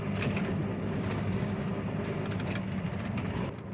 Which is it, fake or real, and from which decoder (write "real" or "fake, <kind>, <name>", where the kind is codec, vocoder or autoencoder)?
real